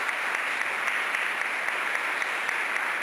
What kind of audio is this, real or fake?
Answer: real